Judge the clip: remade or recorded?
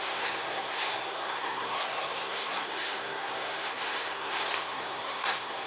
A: remade